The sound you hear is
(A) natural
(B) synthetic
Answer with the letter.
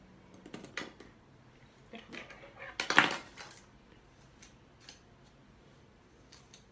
A